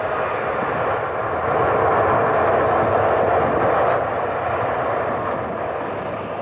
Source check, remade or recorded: recorded